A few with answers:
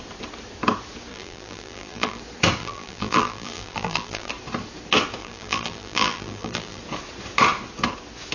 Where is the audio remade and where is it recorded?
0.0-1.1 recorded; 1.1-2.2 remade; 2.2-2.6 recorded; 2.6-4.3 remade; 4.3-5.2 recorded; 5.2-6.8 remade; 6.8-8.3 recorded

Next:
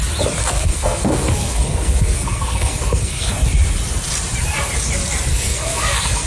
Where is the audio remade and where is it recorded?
0.0-0.4 recorded; 0.4-3.3 remade; 3.3-5.3 recorded; 5.3-6.3 remade